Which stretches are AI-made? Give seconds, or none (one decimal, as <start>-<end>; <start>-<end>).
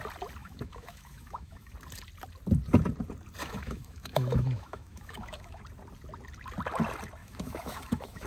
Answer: 0.4-1.7; 3.4-5.6; 7.2-8.3